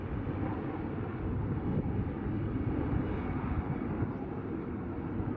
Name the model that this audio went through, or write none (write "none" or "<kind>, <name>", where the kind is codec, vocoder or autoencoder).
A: none